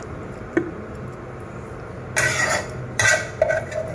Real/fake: real